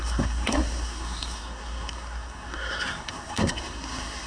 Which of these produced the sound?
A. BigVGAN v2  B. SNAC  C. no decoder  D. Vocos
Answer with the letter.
B